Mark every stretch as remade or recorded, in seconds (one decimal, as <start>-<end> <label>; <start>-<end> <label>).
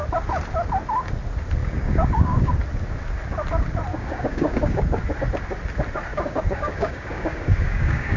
0.0-1.6 recorded; 1.6-2.5 remade; 2.5-3.9 recorded; 3.9-5.0 remade; 5.0-6.1 recorded; 6.1-8.2 remade